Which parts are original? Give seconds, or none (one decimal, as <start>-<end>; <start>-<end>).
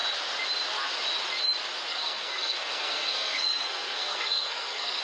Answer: 0.0-1.9